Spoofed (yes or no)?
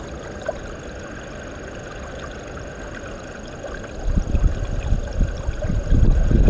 no